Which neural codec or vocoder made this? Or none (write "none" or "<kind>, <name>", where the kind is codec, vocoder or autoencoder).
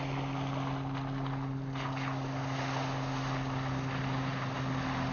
none